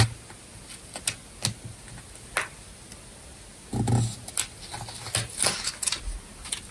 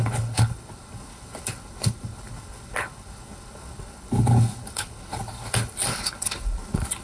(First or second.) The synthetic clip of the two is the second